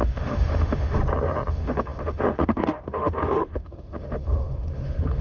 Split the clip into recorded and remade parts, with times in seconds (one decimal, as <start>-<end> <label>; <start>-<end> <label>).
0.0-1.0 remade; 1.0-1.5 recorded; 1.5-5.2 remade